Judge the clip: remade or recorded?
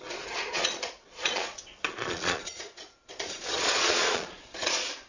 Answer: remade